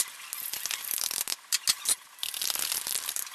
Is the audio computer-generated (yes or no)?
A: no